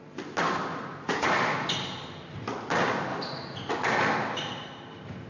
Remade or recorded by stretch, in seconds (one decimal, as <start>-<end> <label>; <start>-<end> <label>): 0.0-0.7 recorded; 0.7-1.4 remade; 1.4-3.1 recorded; 3.1-3.7 remade; 3.7-5.3 recorded